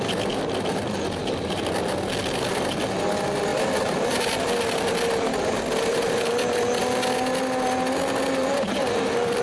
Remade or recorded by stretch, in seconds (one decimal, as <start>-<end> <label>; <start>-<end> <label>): 0.0-1.2 recorded; 1.2-1.7 remade; 1.7-3.5 recorded; 3.5-6.8 remade; 6.8-8.4 recorded; 8.4-9.4 remade

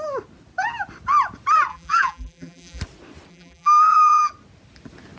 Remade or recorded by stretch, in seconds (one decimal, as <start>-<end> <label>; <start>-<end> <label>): 0.0-1.7 recorded; 1.7-2.8 remade; 2.8-3.3 recorded; 3.3-4.3 remade; 4.3-5.2 recorded

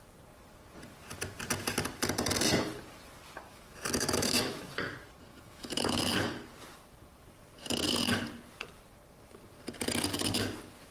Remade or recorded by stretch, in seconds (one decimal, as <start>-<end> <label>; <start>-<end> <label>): 0.0-3.5 recorded; 3.5-4.6 remade; 4.6-5.3 recorded; 5.3-6.0 remade; 6.0-10.9 recorded

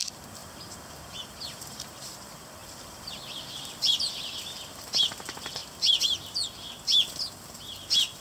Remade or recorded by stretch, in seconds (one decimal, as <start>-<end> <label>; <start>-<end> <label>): 0.0-0.4 recorded; 0.4-1.8 remade; 1.8-2.6 recorded; 2.6-4.9 remade; 4.9-8.2 recorded

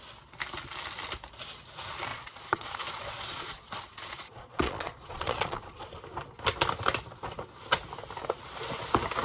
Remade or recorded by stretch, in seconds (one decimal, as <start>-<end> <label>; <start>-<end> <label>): 0.0-2.1 recorded; 2.1-6.0 remade; 6.0-9.2 recorded

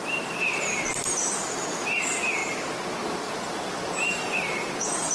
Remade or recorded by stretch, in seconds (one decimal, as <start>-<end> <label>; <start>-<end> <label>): 0.0-2.4 remade; 2.4-3.7 recorded; 3.7-5.1 remade

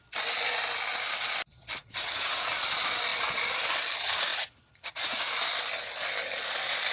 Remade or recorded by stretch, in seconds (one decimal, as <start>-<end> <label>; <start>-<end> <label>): 0.0-1.8 recorded; 1.8-2.5 remade; 2.5-4.3 recorded; 4.3-5.2 remade; 5.2-6.9 recorded

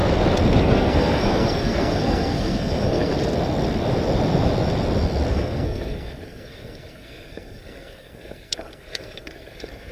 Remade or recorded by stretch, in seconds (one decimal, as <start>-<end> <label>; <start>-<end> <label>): 0.0-0.6 recorded; 0.6-3.1 remade; 3.1-5.3 recorded; 5.3-9.9 remade